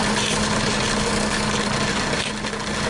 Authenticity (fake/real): real